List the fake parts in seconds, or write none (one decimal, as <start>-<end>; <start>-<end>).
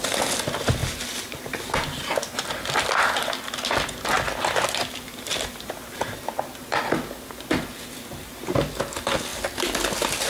0.8-2.5; 5.3-6.4